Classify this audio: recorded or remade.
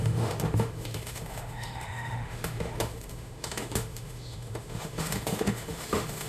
remade